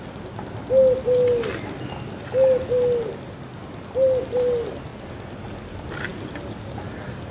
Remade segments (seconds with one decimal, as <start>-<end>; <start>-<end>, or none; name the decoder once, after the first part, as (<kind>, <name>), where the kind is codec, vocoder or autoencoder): none